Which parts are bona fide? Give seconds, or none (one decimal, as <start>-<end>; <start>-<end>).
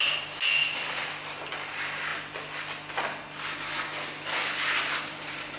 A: 0.0-0.6; 1.1-5.6